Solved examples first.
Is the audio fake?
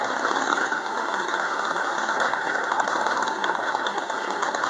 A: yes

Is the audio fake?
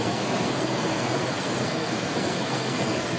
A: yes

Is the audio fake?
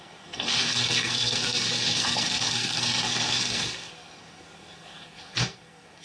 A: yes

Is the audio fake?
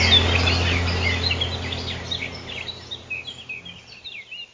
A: no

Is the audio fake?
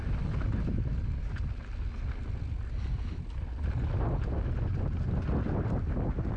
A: no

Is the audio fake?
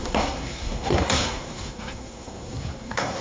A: yes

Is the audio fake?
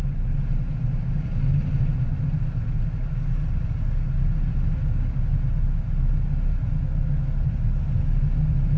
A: no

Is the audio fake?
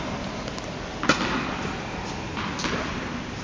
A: no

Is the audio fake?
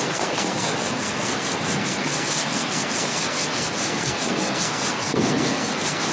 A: yes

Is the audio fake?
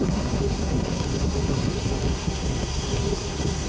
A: yes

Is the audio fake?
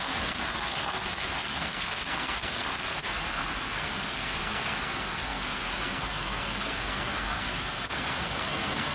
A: yes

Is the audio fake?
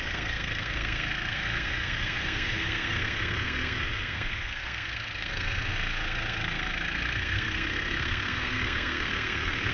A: yes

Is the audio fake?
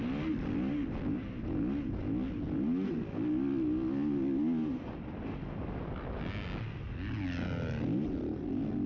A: no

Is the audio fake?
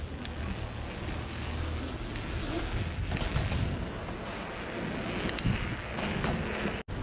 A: no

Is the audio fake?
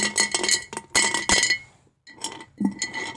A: no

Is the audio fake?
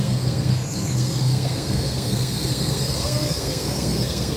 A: yes